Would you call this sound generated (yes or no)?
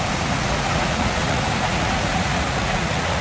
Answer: yes